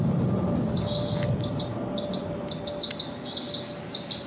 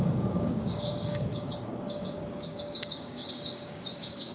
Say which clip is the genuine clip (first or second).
first